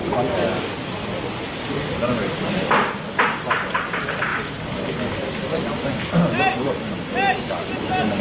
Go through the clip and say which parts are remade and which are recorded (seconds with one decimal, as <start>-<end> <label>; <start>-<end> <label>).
0.0-8.2 recorded